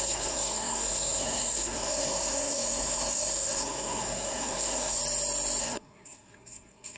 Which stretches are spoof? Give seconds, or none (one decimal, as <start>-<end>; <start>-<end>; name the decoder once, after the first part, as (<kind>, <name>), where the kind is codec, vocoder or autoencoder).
0.0-5.0 (codec, SNAC); 5.6-7.0